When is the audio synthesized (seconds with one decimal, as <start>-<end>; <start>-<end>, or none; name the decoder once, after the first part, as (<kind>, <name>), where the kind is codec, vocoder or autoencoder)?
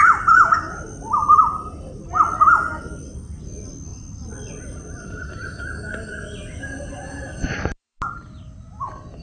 none